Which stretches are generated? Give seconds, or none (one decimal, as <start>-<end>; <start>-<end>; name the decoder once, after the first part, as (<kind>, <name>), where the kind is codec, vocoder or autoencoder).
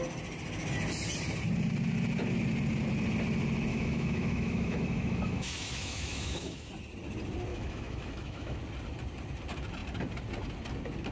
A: 3.7-6.7 (autoencoder, DAC-VAE); 7.5-8.6